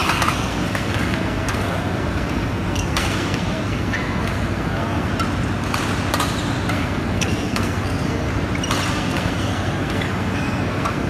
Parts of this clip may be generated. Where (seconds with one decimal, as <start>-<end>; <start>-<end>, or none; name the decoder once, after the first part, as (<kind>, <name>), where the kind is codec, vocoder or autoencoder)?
0.0-5.1 (codec, SNAC); 6.7-8.3; 8.9-11.1